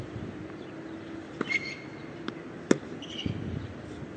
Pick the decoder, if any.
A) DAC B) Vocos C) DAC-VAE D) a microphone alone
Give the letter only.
D